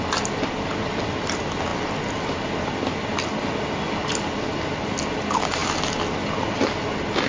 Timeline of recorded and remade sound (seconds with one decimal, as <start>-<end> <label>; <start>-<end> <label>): 0.0-7.3 recorded